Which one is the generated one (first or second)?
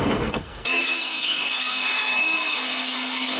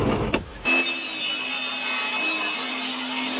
first